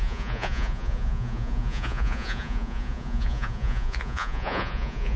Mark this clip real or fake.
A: fake